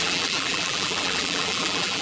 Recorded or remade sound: remade